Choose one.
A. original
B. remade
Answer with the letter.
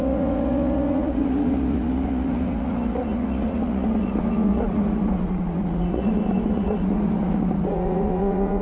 B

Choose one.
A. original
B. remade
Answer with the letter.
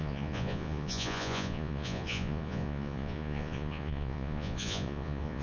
B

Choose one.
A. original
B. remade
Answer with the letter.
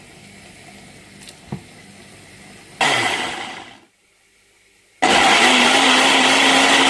A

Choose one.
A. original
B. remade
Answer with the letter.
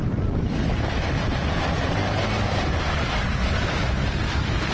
A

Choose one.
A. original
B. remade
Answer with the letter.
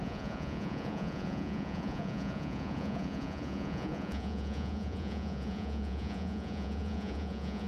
B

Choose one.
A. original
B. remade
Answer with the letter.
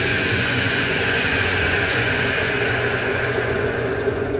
B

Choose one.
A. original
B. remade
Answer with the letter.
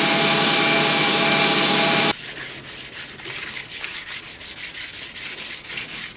A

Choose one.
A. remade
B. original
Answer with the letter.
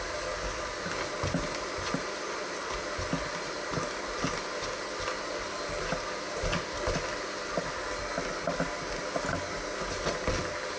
B